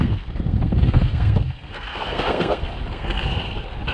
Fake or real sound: fake